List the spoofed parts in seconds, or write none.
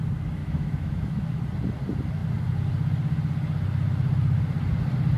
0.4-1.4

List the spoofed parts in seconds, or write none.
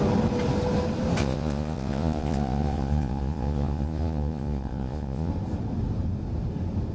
1.2-5.3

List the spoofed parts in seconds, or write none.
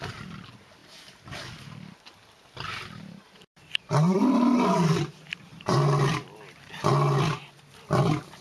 0.8-5.1; 5.5-6.7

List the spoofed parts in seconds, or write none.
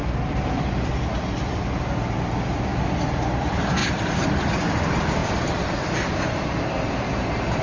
0.0-2.7; 3.4-7.6